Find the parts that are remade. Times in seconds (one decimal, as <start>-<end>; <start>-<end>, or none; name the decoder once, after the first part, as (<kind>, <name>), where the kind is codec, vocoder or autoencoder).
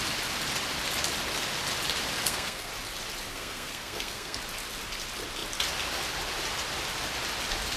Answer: 2.2-2.7 (codec, SNAC); 3.3-4.4